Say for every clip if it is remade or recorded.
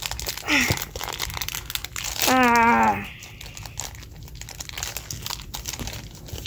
recorded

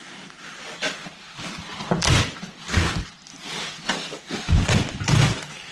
recorded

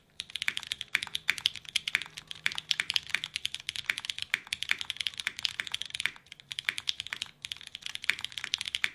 recorded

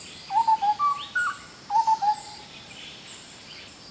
recorded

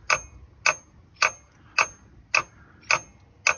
recorded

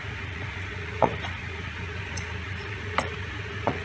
remade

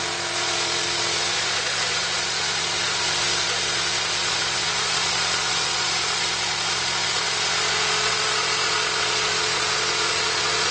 remade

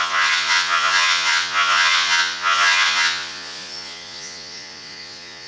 remade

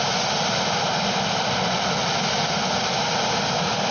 recorded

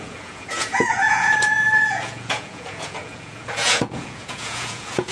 remade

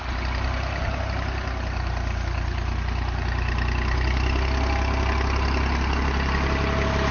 recorded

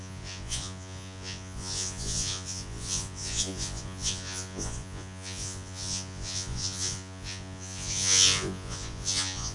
remade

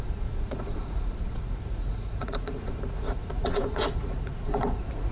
remade